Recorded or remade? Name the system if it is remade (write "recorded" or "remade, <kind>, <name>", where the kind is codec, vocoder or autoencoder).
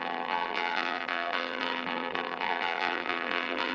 remade, vocoder, BigVGAN v2